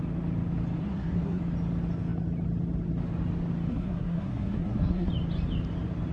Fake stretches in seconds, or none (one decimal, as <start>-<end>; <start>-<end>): 0.8-1.4; 3.7-5.1